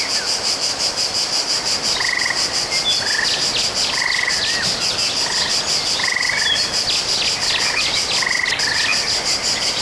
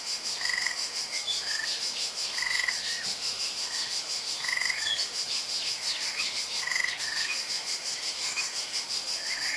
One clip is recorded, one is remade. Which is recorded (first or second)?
first